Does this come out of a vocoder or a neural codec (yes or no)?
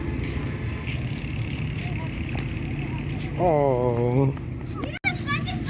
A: no